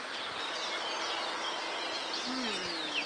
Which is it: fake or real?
real